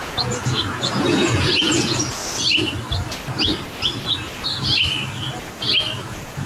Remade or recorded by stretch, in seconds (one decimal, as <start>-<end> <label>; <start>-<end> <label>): 0.0-2.2 remade; 2.2-6.0 recorded; 6.0-6.5 remade